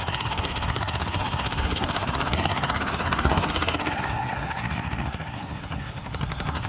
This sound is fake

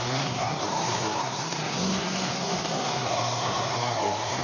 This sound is fake